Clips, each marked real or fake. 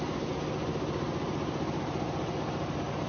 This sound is real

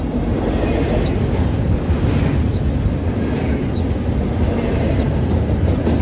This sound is real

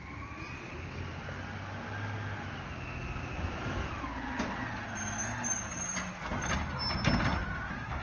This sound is real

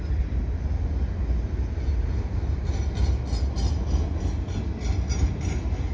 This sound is real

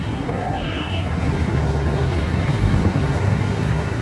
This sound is fake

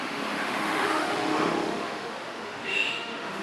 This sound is fake